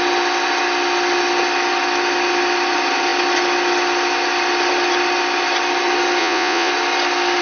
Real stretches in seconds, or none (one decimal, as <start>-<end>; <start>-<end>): 0.0-6.2; 6.7-7.4